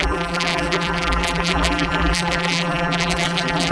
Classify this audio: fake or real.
fake